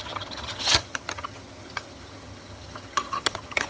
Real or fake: fake